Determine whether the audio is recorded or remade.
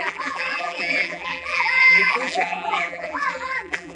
remade